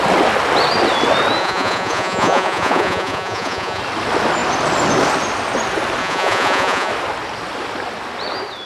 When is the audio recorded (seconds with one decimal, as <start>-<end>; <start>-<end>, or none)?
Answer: 0.0-1.4; 3.8-6.0; 6.9-8.7